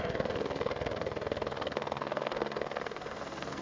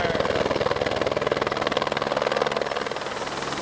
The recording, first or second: second